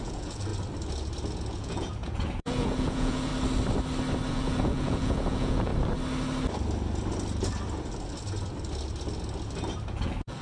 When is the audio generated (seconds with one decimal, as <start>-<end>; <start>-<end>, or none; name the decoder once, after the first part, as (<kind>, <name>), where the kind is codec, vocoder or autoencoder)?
0.0-0.5 (vocoder, Vocos); 1.5-3.3; 4.3-5.7; 9.9-10.4